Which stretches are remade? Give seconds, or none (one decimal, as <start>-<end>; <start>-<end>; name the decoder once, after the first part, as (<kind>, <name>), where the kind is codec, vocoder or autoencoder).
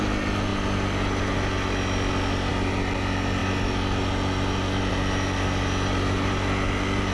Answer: none